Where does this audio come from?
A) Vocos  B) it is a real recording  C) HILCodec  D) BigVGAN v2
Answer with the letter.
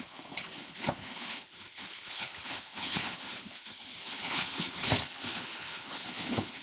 C